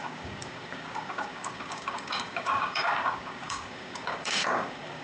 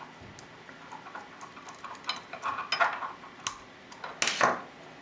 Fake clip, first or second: first